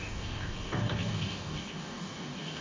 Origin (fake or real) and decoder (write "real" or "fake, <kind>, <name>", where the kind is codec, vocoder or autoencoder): fake, codec, DAC